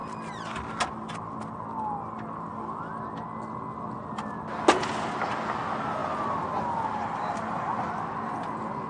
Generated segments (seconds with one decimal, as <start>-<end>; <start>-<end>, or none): 6.0-6.6